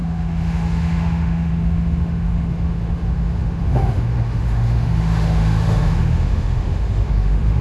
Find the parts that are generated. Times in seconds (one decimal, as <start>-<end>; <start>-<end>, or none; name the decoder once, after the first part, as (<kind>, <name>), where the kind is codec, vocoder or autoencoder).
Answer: 0.0-7.6 (autoencoder, DAC-VAE)